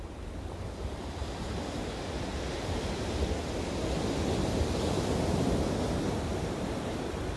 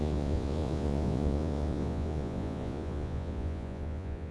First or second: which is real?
first